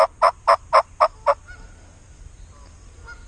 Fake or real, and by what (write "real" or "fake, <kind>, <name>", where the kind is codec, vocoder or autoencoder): real